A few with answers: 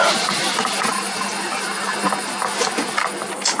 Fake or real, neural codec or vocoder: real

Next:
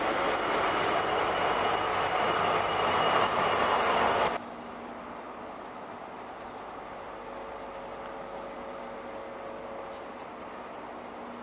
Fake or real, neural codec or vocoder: real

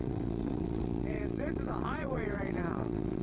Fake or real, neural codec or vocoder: fake, vocoder, WaveNeXt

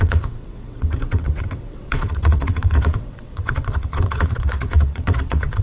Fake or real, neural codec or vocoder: fake, vocoder, WaveNeXt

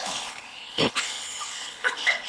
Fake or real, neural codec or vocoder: fake, codec, HILCodec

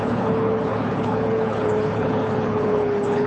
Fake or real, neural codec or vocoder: fake, codec, HILCodec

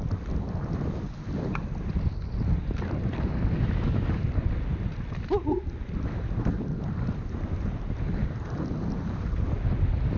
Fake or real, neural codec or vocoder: real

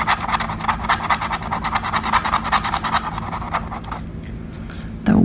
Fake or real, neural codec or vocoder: real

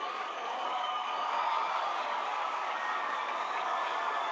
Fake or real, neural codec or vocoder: fake, codec, DAC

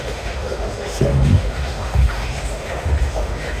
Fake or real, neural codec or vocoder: fake, autoencoder, DAC-VAE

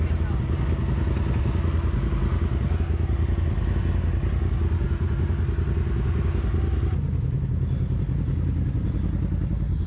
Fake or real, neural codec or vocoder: real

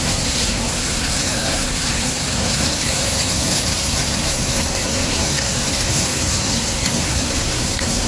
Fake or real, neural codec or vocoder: fake, codec, SNAC